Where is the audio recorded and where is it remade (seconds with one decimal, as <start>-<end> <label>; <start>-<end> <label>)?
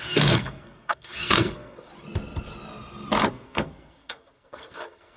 0.0-1.9 remade; 1.9-3.3 recorded; 3.3-5.2 remade